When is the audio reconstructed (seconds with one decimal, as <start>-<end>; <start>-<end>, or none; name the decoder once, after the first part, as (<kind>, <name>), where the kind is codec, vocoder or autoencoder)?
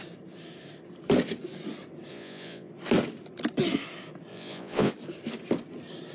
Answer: 2.1-2.7 (vocoder, Vocos); 4.3-4.9